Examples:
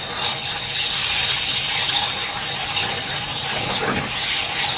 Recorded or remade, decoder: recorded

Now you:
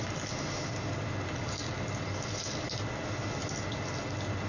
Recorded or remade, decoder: recorded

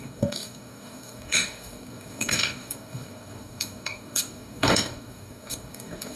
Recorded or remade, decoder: remade, codec, DAC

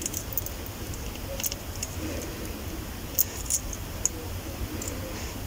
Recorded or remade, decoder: recorded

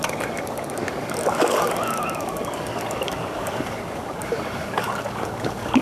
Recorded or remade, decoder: remade, codec, DAC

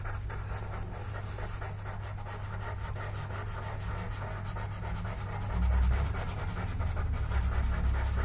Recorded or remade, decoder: recorded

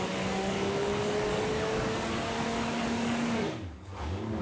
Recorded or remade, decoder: remade, codec, DAC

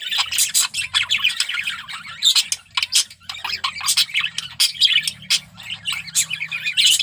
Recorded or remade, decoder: recorded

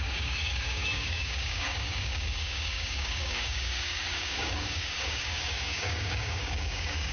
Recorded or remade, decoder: remade, codec, DAC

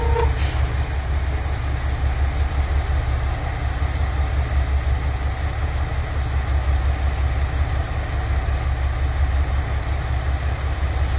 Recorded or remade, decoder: recorded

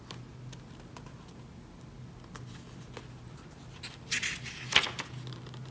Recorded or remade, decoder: recorded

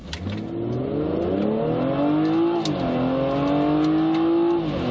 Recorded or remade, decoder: recorded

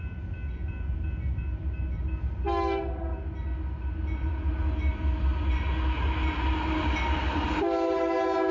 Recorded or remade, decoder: recorded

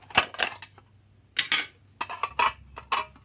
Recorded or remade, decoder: recorded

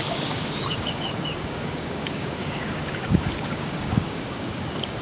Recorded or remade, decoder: remade, codec, DAC